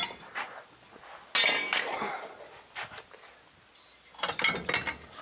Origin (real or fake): real